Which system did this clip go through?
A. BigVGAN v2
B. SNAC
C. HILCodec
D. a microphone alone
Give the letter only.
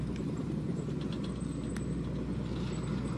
D